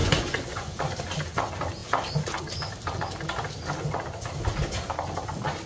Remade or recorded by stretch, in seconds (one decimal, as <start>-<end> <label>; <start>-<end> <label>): 0.0-0.8 remade; 0.8-5.7 recorded